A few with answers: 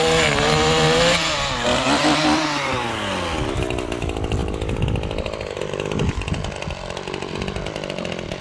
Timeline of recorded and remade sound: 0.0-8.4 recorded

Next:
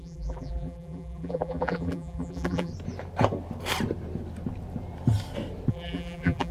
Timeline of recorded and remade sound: 0.0-2.7 remade; 2.7-5.7 recorded; 5.7-6.5 remade

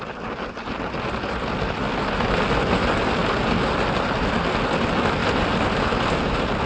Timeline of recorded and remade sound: 0.0-5.2 recorded; 5.2-6.3 remade; 6.3-6.7 recorded